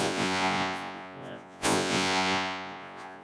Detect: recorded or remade remade